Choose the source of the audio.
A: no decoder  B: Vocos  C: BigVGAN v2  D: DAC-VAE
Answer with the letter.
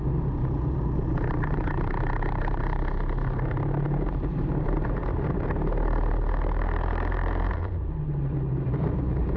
C